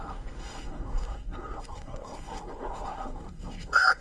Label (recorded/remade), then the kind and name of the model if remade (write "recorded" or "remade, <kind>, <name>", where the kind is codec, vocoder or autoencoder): remade, codec, SNAC